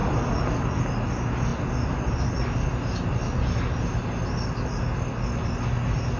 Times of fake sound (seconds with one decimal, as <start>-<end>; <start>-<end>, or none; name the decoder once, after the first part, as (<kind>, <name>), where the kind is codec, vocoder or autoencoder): none